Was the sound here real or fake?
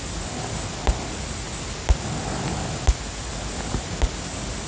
real